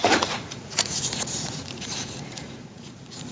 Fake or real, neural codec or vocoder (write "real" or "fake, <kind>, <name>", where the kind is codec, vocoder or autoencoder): fake, vocoder, Vocos